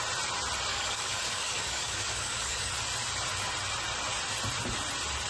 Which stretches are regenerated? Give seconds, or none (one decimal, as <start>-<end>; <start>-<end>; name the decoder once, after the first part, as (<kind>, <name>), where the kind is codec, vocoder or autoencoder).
0.7-2.7 (codec, DAC)